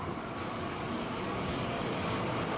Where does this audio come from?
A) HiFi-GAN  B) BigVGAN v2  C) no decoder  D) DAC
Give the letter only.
D